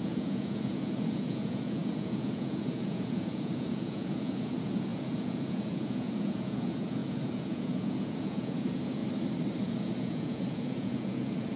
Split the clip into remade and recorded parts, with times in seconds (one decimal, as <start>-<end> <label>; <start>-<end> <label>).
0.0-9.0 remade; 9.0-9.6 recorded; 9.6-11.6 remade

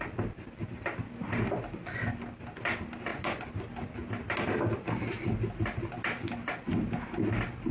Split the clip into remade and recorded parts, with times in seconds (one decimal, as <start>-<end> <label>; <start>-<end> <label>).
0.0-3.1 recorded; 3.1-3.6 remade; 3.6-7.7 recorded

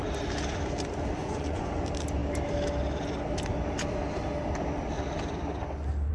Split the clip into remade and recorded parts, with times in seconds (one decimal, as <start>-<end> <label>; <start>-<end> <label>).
0.0-1.2 recorded; 1.2-1.8 remade; 1.8-6.1 recorded

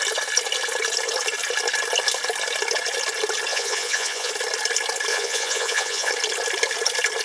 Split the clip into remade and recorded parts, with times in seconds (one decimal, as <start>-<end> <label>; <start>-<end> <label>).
0.0-3.5 recorded; 3.5-4.3 remade; 4.3-5.1 recorded; 5.1-6.1 remade; 6.1-7.2 recorded

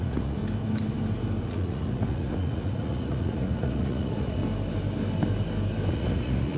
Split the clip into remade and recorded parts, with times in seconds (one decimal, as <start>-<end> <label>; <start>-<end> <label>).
0.0-0.4 remade; 0.4-1.4 recorded; 1.4-4.4 remade; 4.4-5.9 recorded; 5.9-6.6 remade

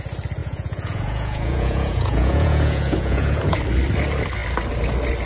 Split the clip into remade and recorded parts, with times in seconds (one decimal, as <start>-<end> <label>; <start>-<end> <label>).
0.0-0.4 recorded; 0.4-3.6 remade; 3.6-5.3 recorded